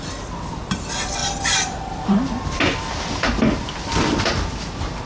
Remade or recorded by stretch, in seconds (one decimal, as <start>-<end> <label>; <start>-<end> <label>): 0.0-1.2 recorded; 1.2-4.2 remade; 4.2-5.1 recorded